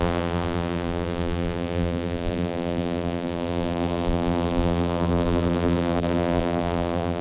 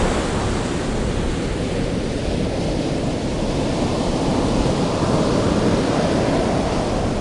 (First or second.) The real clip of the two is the second